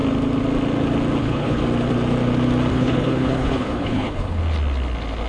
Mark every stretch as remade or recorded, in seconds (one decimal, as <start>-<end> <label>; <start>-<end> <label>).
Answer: 0.0-1.2 recorded; 1.2-1.6 remade; 1.6-2.7 recorded; 2.7-4.4 remade; 4.4-5.3 recorded

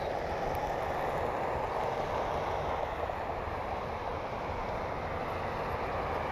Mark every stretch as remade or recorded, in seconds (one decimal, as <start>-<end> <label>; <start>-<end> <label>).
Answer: 0.0-4.1 recorded; 4.1-5.6 remade; 5.6-6.3 recorded

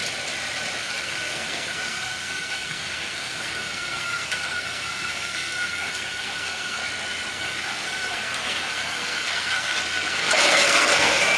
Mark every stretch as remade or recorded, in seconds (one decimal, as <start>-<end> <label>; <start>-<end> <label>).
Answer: 0.0-0.8 recorded; 0.8-6.8 remade; 6.8-7.3 recorded; 7.3-11.4 remade

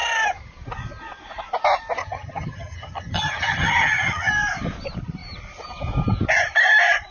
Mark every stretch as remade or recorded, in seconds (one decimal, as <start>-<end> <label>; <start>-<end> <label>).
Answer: 0.0-2.0 recorded; 2.0-4.3 remade; 4.3-7.1 recorded